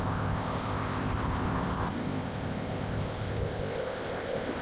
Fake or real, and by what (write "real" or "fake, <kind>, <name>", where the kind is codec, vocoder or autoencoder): fake, codec, ZipCodec